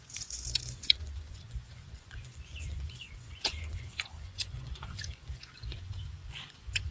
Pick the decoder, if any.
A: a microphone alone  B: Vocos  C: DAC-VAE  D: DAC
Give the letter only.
B